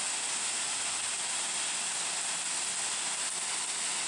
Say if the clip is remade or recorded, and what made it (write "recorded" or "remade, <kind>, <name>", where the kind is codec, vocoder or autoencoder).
recorded